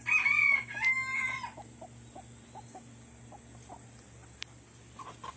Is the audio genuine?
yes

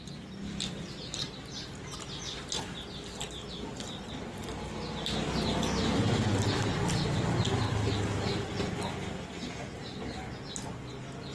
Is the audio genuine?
yes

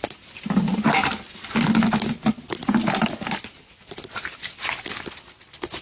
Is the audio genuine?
yes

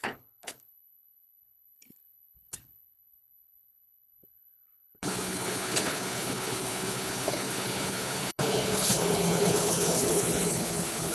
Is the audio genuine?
no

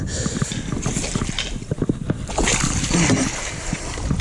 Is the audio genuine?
yes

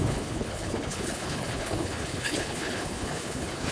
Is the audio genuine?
no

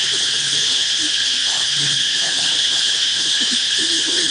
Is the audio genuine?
no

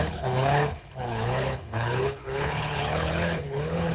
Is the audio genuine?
no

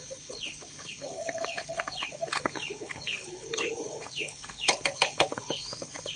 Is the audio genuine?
no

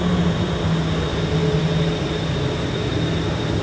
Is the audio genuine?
yes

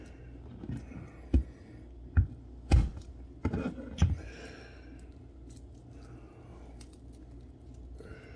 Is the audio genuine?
yes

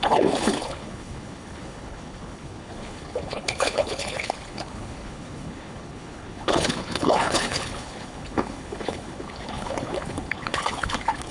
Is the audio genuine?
no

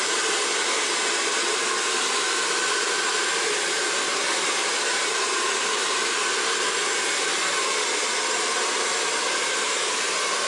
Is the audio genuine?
yes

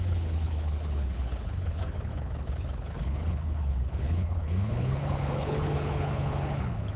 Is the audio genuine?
no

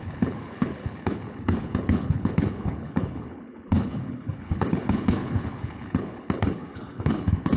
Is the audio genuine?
no